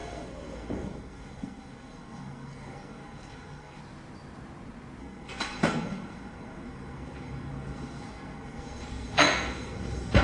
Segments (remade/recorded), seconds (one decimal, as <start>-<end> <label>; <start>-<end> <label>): 0.0-3.8 remade; 3.8-5.0 recorded; 5.0-10.2 remade